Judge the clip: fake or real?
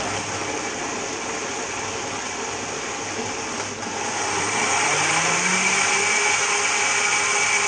real